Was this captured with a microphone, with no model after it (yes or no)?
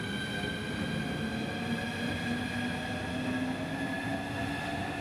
yes